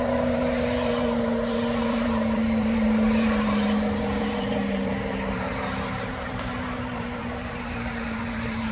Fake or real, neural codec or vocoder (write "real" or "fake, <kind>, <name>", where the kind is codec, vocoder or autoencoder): fake, vocoder, BigVGAN v2